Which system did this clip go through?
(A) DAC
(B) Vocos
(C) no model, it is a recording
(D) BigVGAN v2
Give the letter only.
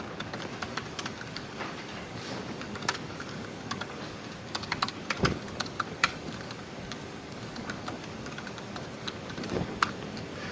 A